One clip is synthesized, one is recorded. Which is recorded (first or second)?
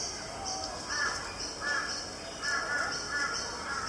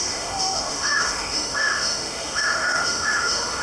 first